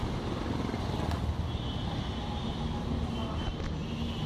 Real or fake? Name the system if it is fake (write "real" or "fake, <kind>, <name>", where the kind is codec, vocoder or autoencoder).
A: real